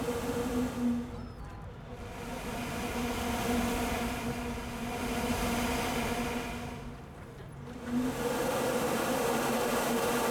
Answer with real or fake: real